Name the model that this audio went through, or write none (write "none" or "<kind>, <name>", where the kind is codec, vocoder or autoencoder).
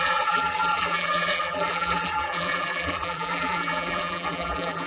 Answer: vocoder, BigVGAN v2